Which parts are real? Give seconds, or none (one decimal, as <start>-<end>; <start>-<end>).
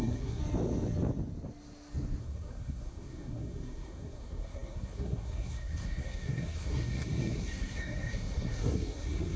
0.4-2.2